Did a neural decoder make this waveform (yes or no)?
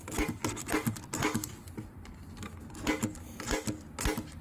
no